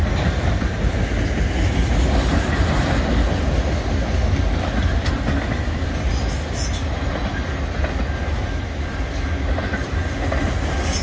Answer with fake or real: real